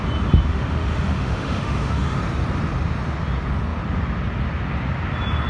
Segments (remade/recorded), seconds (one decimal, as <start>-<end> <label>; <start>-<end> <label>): 0.0-0.5 recorded; 0.5-2.2 remade; 2.2-5.5 recorded

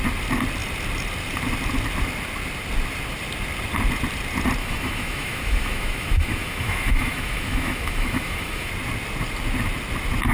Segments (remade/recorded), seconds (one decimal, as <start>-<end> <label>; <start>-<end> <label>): 0.0-4.6 recorded; 4.6-8.7 remade; 8.7-10.3 recorded

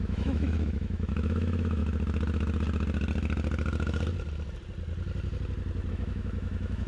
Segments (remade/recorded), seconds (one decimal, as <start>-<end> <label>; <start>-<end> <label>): 0.0-1.8 remade; 1.8-5.9 recorded; 5.9-6.9 remade

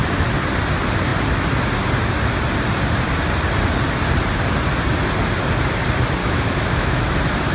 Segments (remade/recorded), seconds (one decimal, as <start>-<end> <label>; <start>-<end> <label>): 0.0-6.2 recorded; 6.2-7.0 remade; 7.0-7.5 recorded

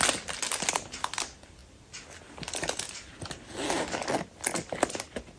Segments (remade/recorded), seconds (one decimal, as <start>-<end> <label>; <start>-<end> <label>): 0.0-5.4 recorded